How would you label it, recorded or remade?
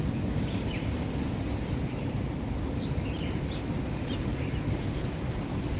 recorded